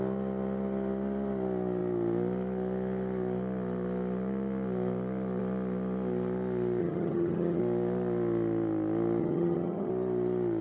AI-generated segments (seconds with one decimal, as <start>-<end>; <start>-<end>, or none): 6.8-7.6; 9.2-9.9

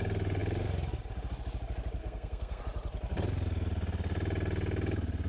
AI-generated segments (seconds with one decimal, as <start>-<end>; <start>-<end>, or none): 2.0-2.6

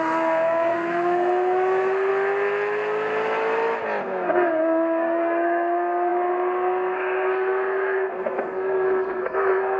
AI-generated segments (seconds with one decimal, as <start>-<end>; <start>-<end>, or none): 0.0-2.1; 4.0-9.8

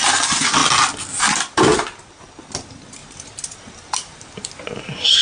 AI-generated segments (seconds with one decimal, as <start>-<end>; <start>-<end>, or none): none

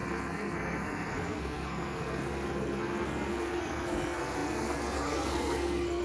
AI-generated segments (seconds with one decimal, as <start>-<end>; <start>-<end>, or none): 0.0-6.0

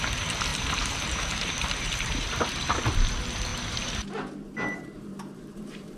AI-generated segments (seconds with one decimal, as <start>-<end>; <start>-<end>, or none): 0.5-2.8; 3.5-6.0

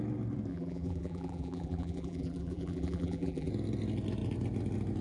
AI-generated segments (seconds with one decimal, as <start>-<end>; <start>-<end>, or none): 0.5-3.5